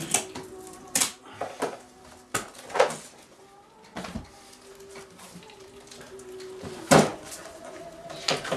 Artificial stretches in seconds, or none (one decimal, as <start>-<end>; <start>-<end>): 7.1-7.8